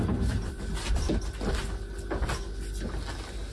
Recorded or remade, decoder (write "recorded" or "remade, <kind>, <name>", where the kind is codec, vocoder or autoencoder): recorded